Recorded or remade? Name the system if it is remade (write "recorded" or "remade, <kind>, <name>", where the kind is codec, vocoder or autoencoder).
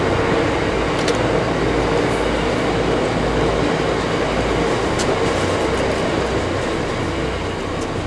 recorded